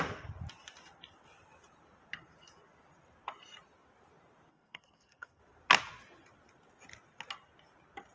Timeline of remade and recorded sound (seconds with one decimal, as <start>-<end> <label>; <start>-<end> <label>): 0.0-4.5 recorded; 4.5-5.4 remade; 5.4-8.1 recorded